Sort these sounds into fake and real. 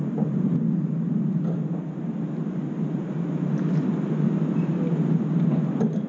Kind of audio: real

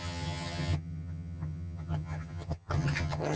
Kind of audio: fake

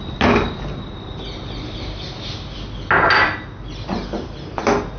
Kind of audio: real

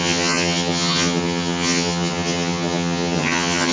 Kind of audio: fake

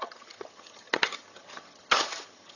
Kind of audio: fake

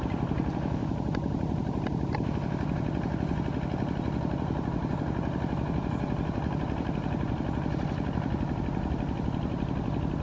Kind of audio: real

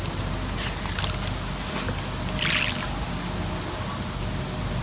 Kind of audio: real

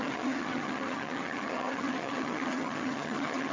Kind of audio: fake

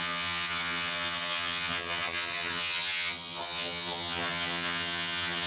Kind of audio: fake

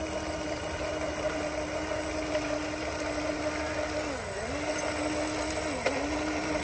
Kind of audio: real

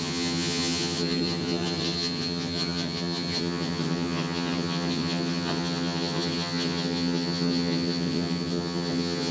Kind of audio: fake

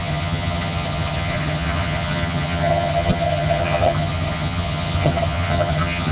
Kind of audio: fake